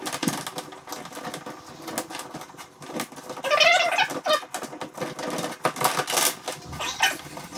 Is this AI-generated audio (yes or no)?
no